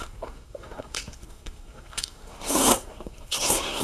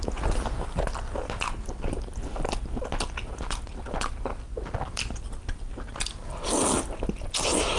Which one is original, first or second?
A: second